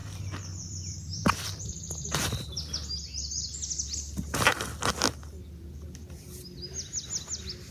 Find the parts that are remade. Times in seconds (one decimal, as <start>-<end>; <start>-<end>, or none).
0.0-2.8